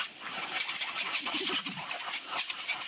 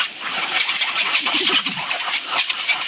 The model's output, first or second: second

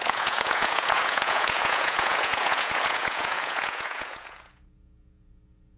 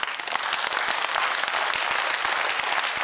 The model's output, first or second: first